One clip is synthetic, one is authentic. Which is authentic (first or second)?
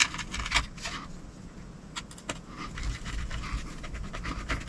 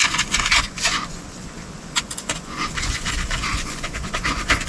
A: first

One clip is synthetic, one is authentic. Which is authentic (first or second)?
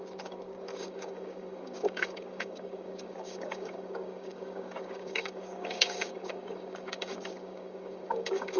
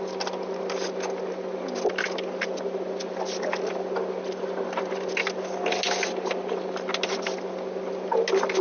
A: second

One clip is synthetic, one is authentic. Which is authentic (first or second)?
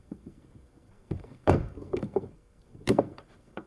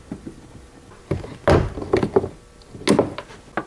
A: second